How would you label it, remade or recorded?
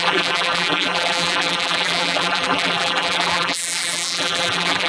remade